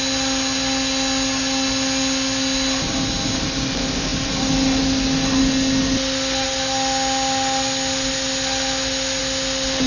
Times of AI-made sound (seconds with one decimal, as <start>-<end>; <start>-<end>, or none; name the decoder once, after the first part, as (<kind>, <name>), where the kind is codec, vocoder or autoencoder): none